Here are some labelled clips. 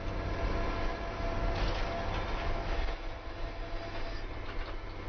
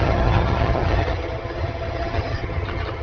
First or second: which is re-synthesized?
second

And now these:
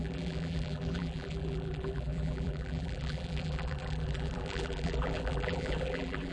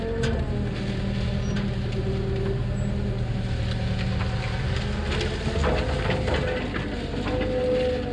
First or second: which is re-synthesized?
first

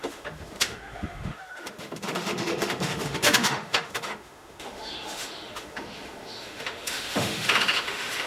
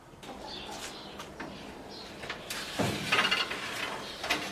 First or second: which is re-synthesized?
first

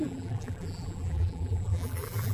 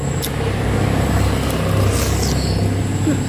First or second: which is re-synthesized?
first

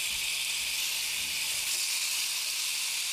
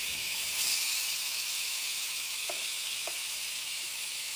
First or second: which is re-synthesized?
second